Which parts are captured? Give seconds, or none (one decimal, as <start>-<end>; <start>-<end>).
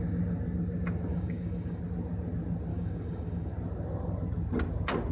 0.0-1.1; 1.8-2.7; 3.5-5.1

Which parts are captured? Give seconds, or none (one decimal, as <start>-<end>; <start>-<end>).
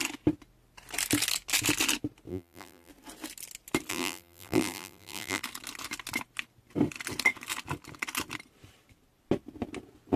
0.0-2.3; 2.9-3.9; 5.4-10.2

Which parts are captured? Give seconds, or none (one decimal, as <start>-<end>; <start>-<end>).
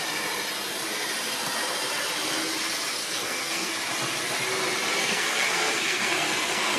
0.0-3.0; 3.7-5.0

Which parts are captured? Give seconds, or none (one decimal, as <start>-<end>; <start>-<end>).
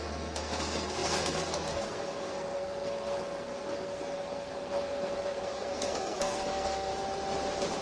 6.9-7.8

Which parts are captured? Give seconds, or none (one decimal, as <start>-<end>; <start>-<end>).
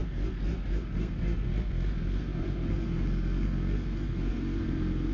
none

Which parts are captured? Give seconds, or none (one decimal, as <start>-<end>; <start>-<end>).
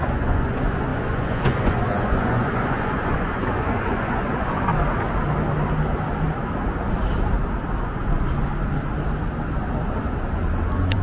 4.7-7.8; 8.5-10.3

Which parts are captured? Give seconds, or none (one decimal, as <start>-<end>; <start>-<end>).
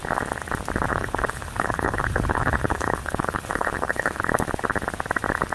0.0-0.9; 4.2-5.5